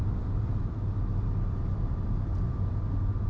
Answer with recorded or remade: remade